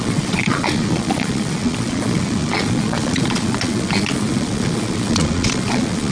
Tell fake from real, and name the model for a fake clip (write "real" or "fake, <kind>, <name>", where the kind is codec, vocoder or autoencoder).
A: fake, vocoder, Vocos